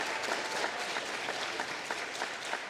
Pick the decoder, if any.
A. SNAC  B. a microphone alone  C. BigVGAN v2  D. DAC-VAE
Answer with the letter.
B